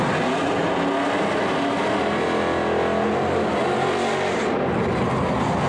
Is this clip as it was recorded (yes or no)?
yes